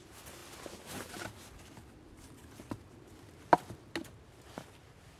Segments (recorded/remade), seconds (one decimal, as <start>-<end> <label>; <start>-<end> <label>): 0.0-5.2 recorded